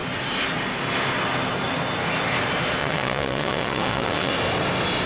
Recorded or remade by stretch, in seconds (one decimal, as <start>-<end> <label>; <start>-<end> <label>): 0.0-2.8 recorded; 2.8-4.3 remade; 4.3-5.1 recorded

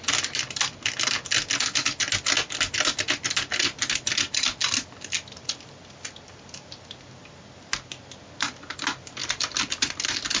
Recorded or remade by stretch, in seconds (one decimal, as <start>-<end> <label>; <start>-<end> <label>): 0.0-4.6 recorded; 4.6-7.1 remade; 7.1-9.2 recorded; 9.2-10.4 remade

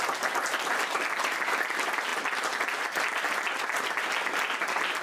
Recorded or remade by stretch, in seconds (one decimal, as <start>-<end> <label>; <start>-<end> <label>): 0.0-5.0 recorded

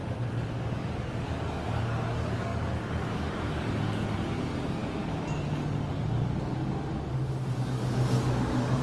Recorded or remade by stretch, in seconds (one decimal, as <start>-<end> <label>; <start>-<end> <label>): 0.0-8.8 remade